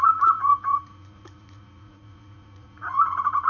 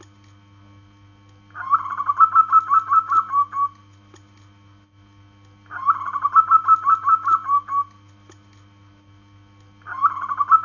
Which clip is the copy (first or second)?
first